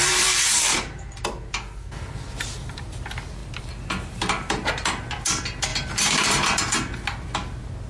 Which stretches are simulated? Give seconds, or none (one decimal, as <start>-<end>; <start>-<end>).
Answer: 0.0-1.2; 5.7-6.6